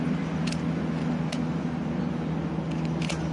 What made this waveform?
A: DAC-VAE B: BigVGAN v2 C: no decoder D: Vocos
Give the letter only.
C